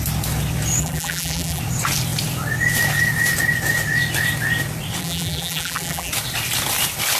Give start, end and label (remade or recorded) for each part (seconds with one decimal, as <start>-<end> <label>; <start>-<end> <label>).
0.0-0.8 recorded; 0.8-1.6 remade; 1.6-5.0 recorded; 5.0-6.1 remade; 6.1-7.2 recorded